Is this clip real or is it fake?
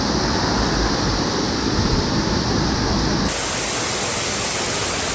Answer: real